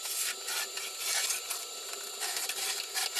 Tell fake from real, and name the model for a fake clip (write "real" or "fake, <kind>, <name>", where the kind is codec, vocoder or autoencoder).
real